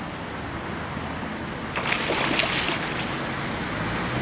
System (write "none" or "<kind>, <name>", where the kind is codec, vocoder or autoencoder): none